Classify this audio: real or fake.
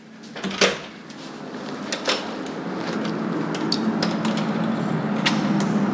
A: real